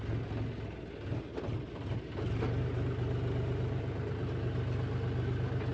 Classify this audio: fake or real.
real